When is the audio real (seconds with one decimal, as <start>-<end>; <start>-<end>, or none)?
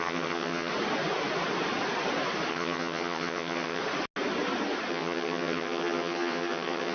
0.7-2.5; 3.8-4.9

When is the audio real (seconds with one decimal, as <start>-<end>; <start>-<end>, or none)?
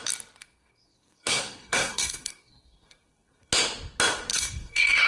0.0-0.4; 3.5-4.3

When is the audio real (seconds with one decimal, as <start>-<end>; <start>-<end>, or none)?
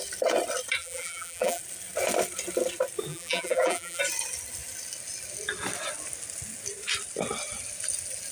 0.0-0.8; 1.6-3.1; 4.0-8.3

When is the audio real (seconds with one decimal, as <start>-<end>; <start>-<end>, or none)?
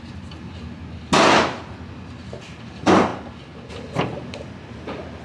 0.0-5.2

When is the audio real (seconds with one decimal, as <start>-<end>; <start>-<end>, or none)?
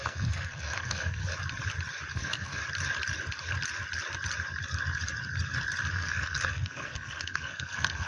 1.2-2.1; 2.6-5.9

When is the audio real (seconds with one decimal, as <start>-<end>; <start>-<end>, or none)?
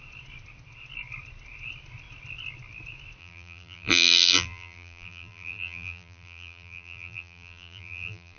0.0-3.2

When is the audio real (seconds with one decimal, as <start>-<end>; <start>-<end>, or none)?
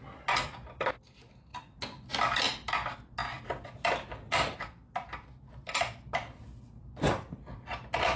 0.0-8.2